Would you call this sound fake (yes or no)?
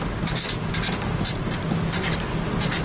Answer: no